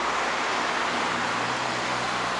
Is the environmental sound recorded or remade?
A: recorded